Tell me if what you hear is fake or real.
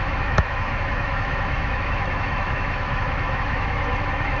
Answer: fake